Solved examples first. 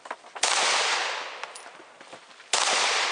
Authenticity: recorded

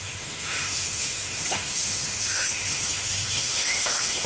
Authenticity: remade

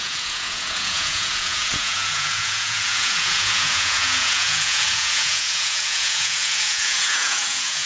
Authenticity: remade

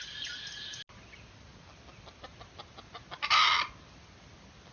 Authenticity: recorded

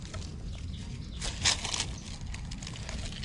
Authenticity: recorded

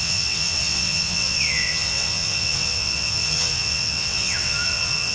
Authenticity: remade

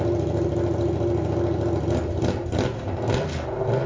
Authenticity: recorded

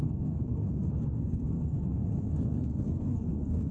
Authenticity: remade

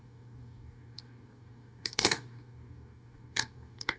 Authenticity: remade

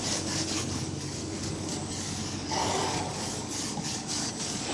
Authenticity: remade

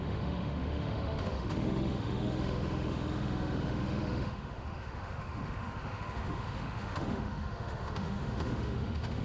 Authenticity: remade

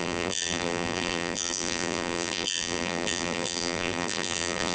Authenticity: remade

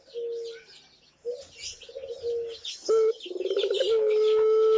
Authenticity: recorded